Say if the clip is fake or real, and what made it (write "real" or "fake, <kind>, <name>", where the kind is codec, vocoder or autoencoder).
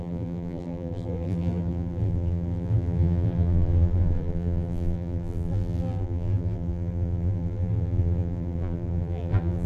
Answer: fake, vocoder, BigVGAN v2